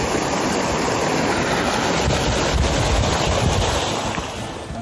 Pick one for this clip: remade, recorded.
recorded